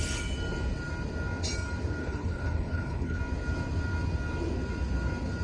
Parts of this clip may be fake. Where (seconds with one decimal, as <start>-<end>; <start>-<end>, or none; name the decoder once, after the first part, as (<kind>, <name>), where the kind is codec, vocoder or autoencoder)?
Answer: 2.0-3.2 (codec, HILCodec)